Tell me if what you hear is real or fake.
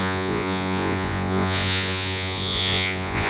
fake